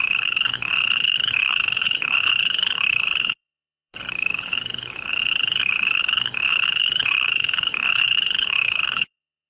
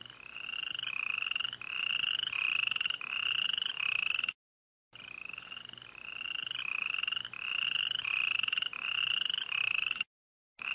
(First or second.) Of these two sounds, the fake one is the first